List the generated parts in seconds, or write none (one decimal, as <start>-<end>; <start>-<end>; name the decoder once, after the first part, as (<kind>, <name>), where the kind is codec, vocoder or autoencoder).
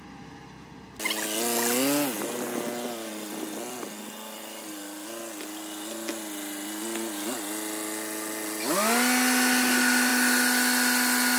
none